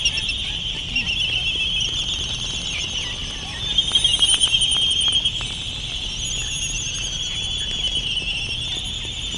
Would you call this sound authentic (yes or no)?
yes